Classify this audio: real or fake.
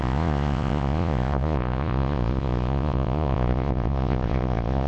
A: fake